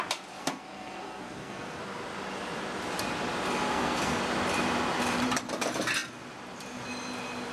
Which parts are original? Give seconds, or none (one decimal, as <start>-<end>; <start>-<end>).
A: 0.0-0.4; 1.8-3.7; 4.2-7.5